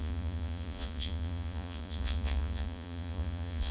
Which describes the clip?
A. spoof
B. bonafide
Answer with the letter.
A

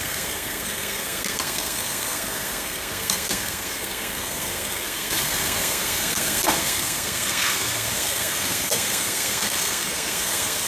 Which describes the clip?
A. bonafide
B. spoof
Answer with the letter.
B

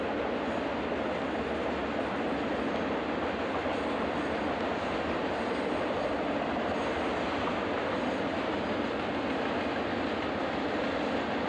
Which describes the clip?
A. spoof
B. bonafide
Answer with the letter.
B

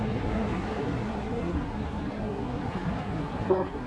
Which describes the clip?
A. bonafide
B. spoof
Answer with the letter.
B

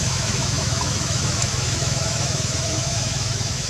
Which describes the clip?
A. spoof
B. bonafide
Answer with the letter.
A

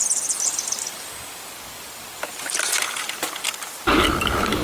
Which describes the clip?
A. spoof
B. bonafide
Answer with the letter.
B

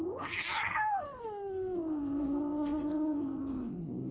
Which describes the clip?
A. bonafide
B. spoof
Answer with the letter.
B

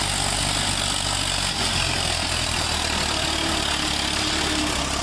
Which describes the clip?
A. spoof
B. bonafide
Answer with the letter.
B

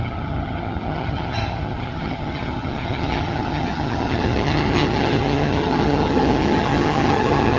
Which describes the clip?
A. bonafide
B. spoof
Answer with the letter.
B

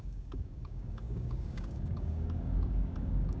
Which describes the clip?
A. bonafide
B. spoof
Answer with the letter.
B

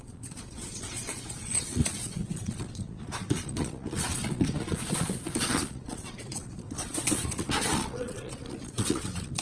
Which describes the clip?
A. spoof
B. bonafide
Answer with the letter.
A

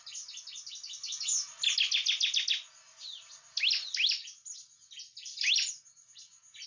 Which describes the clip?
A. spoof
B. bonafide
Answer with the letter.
B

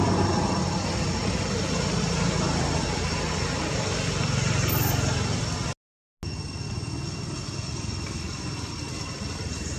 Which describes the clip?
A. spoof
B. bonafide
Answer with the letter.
B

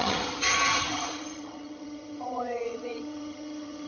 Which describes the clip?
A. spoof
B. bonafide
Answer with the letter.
A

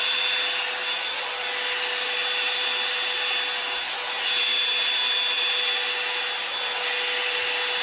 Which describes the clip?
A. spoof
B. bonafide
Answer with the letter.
B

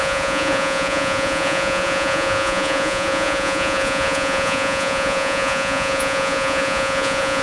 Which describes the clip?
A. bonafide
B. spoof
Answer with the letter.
B